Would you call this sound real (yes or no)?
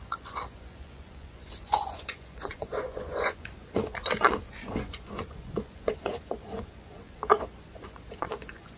no